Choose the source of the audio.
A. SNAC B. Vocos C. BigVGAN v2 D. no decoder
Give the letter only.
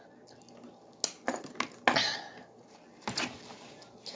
D